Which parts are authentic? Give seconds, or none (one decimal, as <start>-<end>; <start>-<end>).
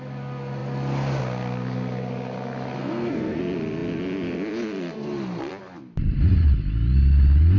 0.0-2.8; 3.4-7.6